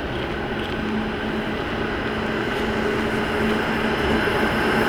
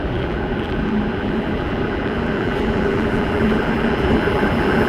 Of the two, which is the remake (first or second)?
second